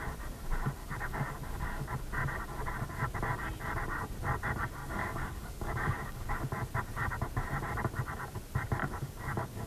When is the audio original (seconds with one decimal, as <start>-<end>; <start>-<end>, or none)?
0.0-0.8; 1.9-4.8; 6.4-8.8